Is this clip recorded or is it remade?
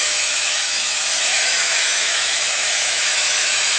remade